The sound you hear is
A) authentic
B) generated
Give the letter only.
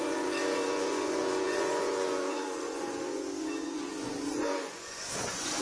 B